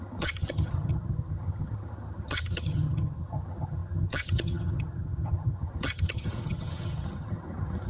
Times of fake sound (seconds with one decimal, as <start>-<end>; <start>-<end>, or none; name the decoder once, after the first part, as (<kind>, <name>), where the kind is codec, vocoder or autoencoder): 0.0-7.9 (vocoder, HiFi-GAN)

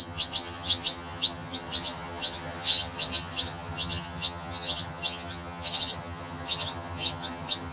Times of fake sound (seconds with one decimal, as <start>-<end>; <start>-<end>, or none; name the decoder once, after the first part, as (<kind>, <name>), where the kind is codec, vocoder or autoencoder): 0.0-7.7 (vocoder, HiFi-GAN)

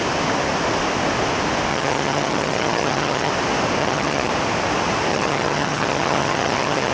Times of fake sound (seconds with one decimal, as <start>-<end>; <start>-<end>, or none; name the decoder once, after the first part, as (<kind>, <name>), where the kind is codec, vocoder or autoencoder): 1.7-3.3 (vocoder, HiFi-GAN); 3.8-4.3; 5.1-6.9

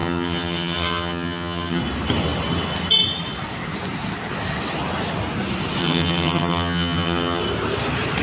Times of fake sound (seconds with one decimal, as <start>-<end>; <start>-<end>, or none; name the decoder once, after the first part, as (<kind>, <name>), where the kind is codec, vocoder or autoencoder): 0.0-1.8 (vocoder, HiFi-GAN); 5.8-7.4

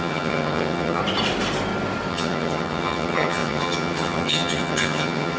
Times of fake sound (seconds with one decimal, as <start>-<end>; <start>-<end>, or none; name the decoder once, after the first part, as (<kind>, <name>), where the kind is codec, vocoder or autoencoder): 0.0-1.0 (vocoder, HiFi-GAN); 2.1-5.4

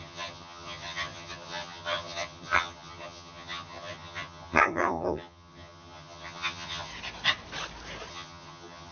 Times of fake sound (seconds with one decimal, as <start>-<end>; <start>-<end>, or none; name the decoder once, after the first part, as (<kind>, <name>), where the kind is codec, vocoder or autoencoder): 0.0-6.9 (vocoder, HiFi-GAN); 8.1-8.9

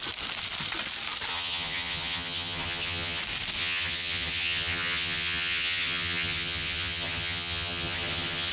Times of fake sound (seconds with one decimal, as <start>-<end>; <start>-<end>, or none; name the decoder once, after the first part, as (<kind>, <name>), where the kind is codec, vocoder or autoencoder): 1.3-3.2 (vocoder, HiFi-GAN); 3.6-8.5